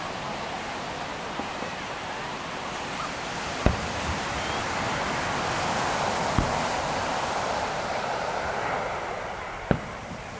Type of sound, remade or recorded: remade